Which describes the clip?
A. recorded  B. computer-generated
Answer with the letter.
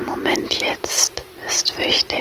A